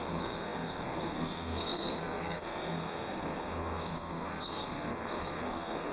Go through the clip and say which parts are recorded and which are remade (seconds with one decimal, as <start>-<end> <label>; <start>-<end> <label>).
0.0-5.9 remade